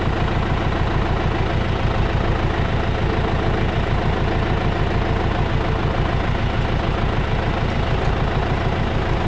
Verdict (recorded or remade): recorded